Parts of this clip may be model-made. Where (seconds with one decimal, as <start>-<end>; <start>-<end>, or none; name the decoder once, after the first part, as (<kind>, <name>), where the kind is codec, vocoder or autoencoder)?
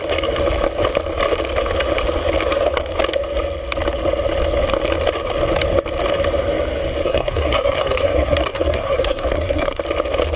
7.0-9.8 (codec, SNAC)